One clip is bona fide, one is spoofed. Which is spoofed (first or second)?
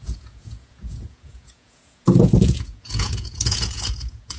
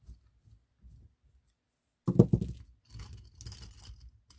first